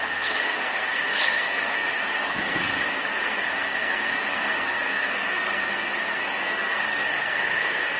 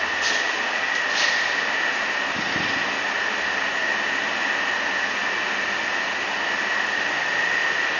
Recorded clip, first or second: second